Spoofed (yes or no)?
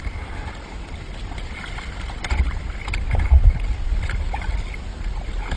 no